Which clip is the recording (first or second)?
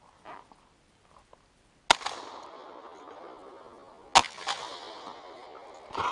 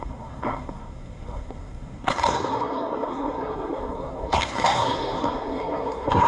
first